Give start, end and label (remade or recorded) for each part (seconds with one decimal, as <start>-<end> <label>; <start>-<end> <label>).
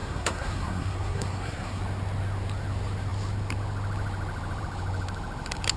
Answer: 0.0-1.8 remade; 1.8-5.8 recorded